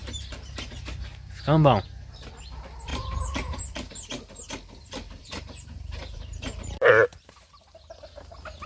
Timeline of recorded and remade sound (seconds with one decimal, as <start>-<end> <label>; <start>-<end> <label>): 0.0-0.7 remade; 0.7-2.9 recorded; 2.9-3.9 remade; 3.9-5.2 recorded; 5.2-7.9 remade; 7.9-8.7 recorded